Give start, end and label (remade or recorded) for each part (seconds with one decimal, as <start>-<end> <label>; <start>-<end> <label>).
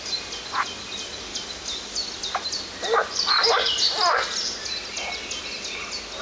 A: 0.0-6.2 recorded